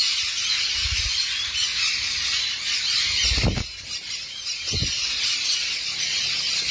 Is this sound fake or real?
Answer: real